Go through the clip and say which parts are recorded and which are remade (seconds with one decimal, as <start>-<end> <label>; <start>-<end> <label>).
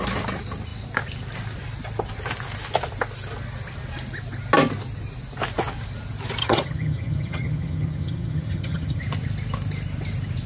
0.0-6.4 recorded; 6.4-9.0 remade; 9.0-10.5 recorded